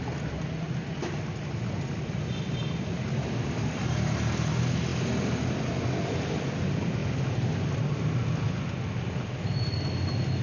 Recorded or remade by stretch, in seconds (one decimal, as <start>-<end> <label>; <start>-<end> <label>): 0.0-10.4 recorded